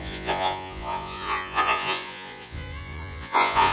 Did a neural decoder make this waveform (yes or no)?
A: yes